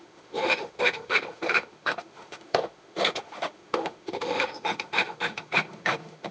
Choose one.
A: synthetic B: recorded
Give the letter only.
A